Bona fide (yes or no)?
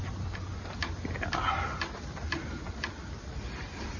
yes